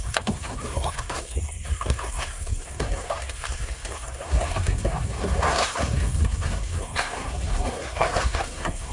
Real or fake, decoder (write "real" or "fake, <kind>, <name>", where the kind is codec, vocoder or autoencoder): fake, codec, SNAC